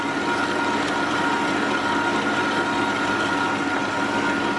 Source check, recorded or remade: recorded